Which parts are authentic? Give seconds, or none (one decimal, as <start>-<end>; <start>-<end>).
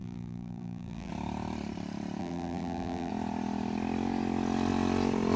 1.1-2.2; 3.1-5.4